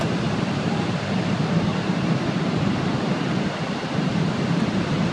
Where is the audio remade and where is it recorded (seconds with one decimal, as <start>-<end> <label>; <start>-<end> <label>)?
0.0-1.2 remade; 1.2-1.7 recorded; 1.7-5.1 remade